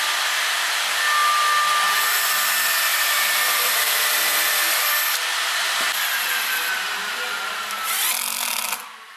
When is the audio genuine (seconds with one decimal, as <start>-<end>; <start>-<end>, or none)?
0.0-2.9; 4.9-9.2